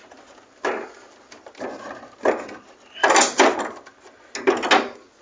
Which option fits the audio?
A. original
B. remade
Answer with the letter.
A